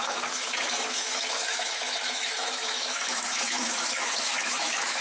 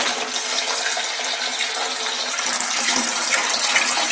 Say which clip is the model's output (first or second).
first